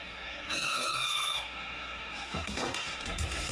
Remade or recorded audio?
remade